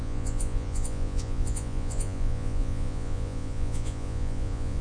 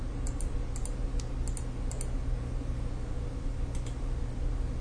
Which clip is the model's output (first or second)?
first